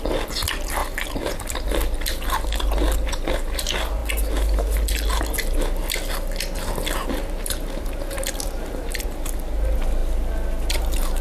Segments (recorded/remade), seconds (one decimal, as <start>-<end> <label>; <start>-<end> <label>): 0.0-11.2 recorded